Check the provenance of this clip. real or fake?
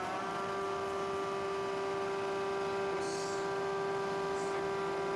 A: real